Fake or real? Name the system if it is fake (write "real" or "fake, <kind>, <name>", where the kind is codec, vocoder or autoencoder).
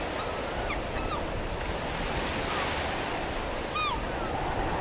real